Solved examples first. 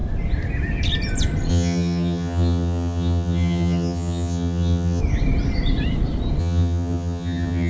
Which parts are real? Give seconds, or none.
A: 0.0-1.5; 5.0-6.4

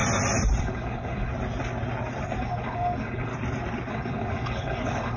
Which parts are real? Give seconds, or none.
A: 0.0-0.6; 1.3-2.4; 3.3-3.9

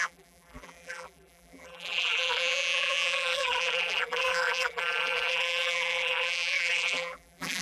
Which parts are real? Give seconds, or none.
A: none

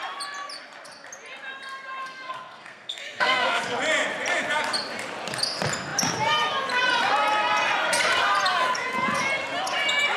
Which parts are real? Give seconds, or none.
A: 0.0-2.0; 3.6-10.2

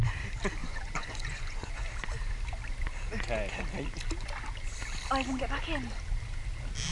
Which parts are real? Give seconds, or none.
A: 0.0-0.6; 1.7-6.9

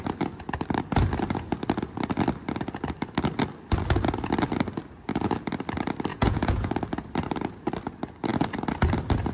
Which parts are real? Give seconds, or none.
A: 0.0-6.1; 6.7-9.3